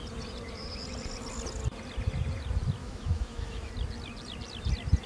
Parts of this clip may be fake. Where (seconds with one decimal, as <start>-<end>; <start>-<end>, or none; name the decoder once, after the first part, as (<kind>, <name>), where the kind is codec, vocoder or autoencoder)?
2.8-3.7 (autoencoder, DAC-VAE)